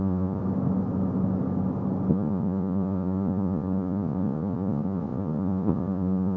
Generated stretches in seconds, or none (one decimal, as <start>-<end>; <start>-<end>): 0.0-0.4; 2.1-6.4